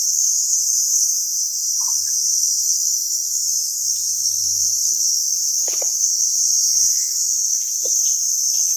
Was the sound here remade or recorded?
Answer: recorded